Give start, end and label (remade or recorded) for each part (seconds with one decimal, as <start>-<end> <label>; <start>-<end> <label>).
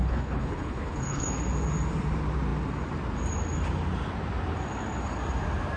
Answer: 0.0-1.3 remade; 1.3-5.8 recorded